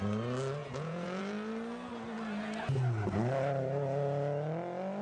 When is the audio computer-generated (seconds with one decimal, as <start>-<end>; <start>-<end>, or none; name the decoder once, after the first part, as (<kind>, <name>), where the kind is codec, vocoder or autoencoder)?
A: 0.6-1.2 (vocoder, Vocos)